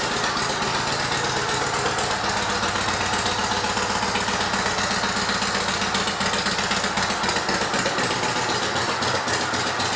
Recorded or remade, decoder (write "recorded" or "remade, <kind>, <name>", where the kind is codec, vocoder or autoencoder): recorded